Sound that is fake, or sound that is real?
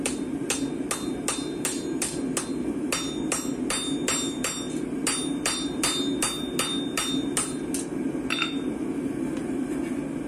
real